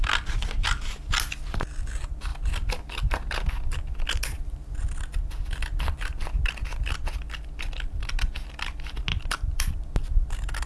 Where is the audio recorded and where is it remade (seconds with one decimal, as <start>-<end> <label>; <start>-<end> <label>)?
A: 0.0-9.1 recorded; 9.1-9.7 remade; 9.7-10.7 recorded